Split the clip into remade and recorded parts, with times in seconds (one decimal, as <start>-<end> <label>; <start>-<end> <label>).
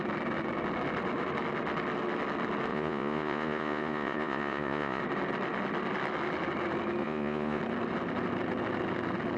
0.0-2.7 recorded; 2.7-5.0 remade; 5.0-7.0 recorded; 7.0-7.6 remade; 7.6-9.4 recorded